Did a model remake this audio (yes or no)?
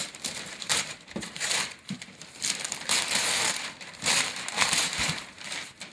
yes